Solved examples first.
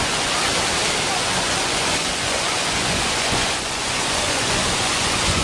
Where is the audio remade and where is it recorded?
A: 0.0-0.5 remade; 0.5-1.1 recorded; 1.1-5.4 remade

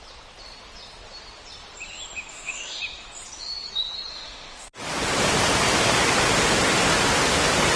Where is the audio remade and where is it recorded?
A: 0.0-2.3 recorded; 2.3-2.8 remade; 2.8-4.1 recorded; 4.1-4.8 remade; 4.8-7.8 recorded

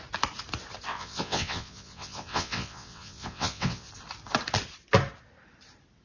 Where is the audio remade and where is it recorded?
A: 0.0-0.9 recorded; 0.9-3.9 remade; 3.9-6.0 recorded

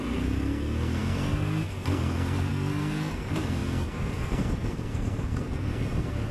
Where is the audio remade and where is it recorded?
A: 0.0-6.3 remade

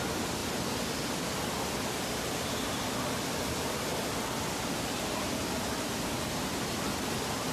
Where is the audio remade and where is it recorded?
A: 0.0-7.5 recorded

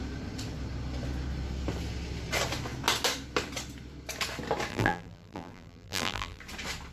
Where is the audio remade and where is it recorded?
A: 0.0-4.7 recorded; 4.7-6.4 remade; 6.4-6.9 recorded